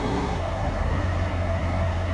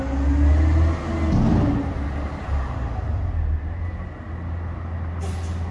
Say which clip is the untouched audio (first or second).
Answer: second